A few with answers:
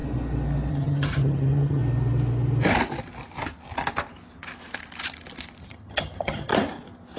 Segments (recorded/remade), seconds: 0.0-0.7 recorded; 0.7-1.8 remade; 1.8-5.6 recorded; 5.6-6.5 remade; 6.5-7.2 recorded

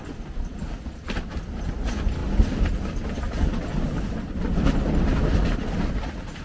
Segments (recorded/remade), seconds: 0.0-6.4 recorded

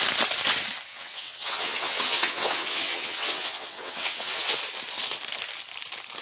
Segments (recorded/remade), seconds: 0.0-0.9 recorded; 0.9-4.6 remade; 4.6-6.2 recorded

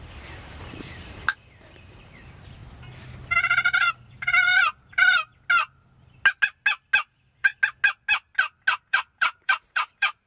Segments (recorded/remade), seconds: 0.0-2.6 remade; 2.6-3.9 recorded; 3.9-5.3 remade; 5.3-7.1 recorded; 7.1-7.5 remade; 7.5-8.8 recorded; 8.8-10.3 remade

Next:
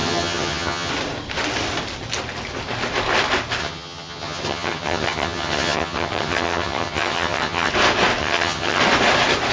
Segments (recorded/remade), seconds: 0.0-0.9 remade; 0.9-3.6 recorded; 3.6-7.7 remade; 7.7-8.2 recorded; 8.2-8.8 remade; 8.8-9.5 recorded

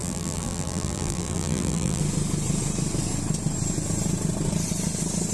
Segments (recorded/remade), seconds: 0.0-2.0 remade; 2.0-5.3 recorded

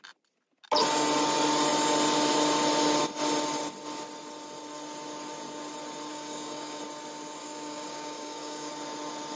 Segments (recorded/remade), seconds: 0.0-6.1 recorded; 6.1-6.8 remade; 6.8-7.4 recorded; 7.4-8.7 remade; 8.7-9.4 recorded

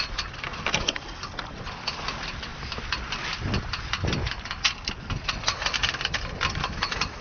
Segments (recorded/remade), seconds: 0.0-7.2 recorded